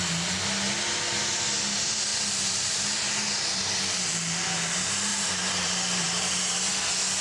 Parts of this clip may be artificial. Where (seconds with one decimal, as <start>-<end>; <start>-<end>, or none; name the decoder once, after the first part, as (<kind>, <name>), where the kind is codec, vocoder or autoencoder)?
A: 2.1-3.8 (vocoder, BigVGAN v2); 5.1-6.7